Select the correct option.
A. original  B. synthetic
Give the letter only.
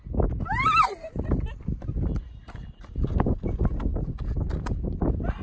A